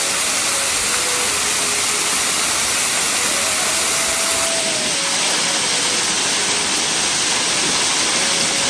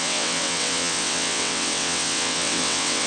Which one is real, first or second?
first